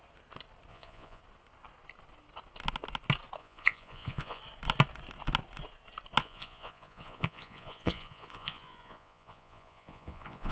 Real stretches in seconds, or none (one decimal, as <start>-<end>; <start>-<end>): 0.0-0.7; 1.2-3.4; 4.4-6.2